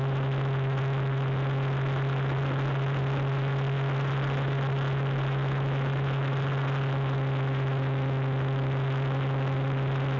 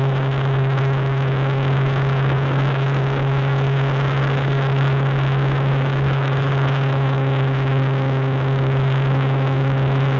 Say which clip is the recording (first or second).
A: first